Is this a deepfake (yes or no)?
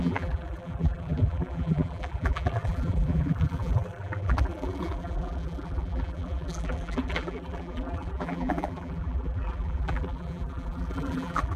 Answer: yes